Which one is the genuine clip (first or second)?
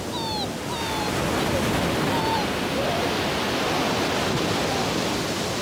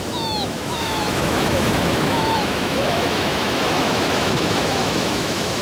first